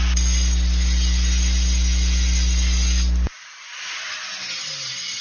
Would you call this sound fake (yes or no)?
no